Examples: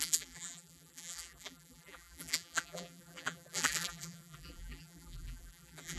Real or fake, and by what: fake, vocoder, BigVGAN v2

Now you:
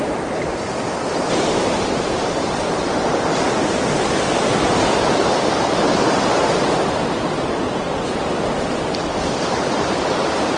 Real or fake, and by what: fake, vocoder, BigVGAN v2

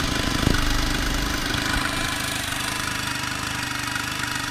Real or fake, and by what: fake, vocoder, BigVGAN v2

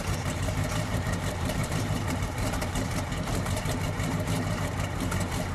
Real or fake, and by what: fake, vocoder, BigVGAN v2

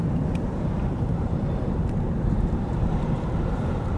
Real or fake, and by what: fake, vocoder, BigVGAN v2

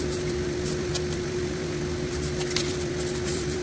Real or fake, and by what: fake, vocoder, BigVGAN v2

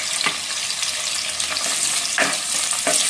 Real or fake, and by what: real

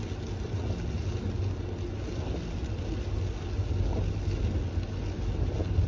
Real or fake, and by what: real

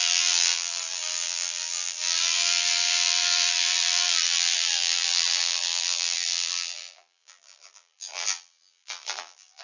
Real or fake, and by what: fake, vocoder, BigVGAN v2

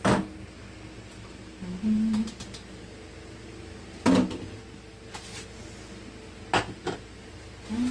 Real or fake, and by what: real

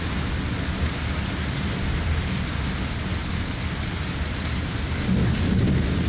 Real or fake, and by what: real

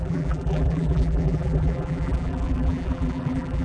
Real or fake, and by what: fake, vocoder, BigVGAN v2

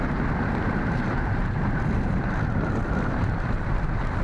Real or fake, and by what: fake, vocoder, BigVGAN v2